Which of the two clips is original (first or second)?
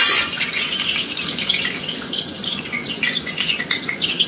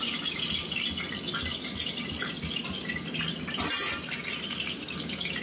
second